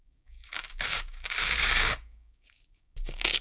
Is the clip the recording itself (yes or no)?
no